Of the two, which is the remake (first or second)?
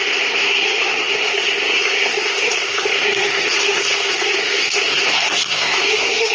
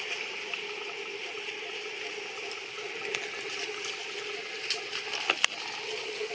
first